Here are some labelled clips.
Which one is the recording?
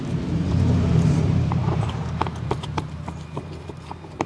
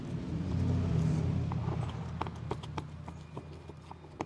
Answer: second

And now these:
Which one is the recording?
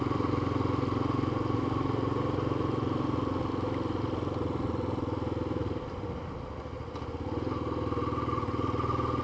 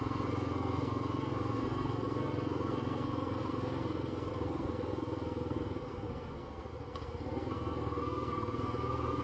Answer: first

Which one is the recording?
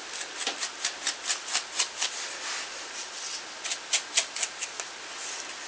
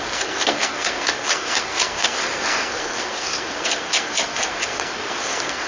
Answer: first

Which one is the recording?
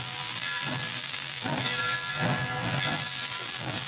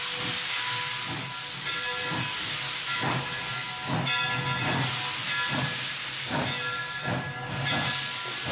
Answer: second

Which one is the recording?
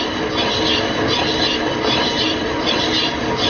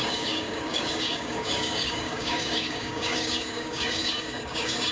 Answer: first